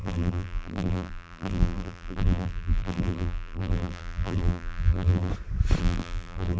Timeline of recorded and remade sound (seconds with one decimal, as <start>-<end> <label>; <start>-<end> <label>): 0.0-5.3 remade; 5.3-5.8 recorded; 5.8-6.6 remade